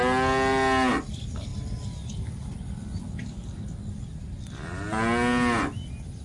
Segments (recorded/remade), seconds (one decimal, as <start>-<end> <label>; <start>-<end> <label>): 0.0-6.2 recorded